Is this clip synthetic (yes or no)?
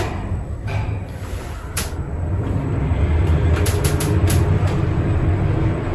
yes